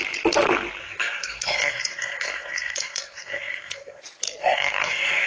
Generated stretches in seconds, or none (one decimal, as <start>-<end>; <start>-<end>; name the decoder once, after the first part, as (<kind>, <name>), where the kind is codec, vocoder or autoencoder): 0.8-4.0 (codec, SNAC); 4.4-5.3